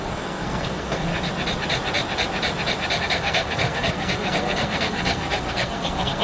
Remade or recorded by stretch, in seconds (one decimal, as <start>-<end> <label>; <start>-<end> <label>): 0.0-1.1 remade; 1.1-3.0 recorded; 3.0-6.2 remade